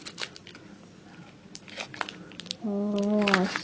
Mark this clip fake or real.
real